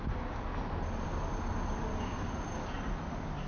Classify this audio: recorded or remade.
recorded